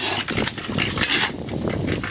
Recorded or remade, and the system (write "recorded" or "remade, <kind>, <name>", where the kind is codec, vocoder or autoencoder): recorded